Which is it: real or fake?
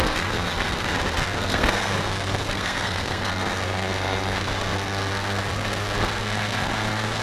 fake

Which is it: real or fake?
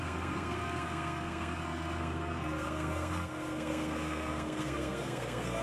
fake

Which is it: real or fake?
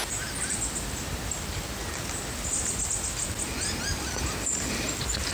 real